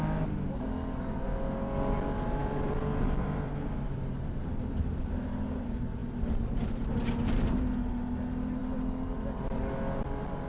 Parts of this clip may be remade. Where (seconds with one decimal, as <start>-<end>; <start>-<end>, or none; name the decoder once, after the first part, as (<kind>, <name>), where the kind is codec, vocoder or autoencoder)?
2.4-5.0 (vocoder, BigVGAN v2)